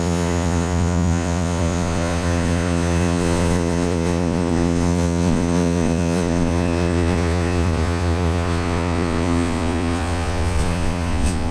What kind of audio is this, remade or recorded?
remade